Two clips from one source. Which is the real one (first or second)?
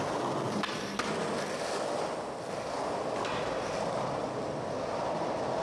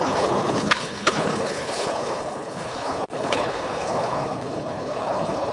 first